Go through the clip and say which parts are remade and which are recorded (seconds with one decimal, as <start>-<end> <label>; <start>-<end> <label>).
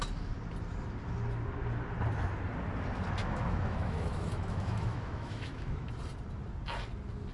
0.0-3.2 recorded; 3.2-5.9 remade; 5.9-7.3 recorded